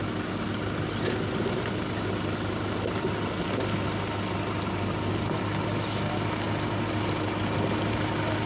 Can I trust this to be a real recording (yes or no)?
yes